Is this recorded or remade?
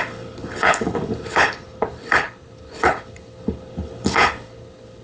remade